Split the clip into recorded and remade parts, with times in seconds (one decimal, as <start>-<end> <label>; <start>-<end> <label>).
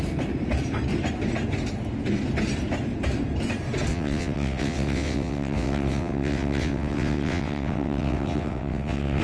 0.0-3.9 recorded; 3.9-9.2 remade